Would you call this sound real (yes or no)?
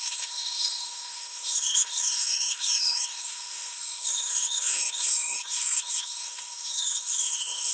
no